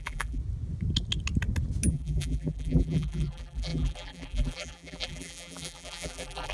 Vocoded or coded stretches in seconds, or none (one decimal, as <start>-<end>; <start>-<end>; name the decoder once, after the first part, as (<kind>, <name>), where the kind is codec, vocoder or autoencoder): 0.0-0.4 (vocoder, BigVGAN v2); 1.9-6.5